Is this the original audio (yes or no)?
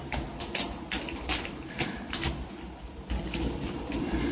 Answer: yes